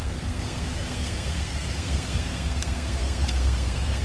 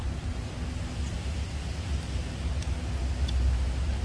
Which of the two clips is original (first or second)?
second